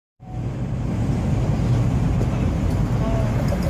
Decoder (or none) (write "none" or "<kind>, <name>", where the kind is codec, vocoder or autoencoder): vocoder, BigVGAN v2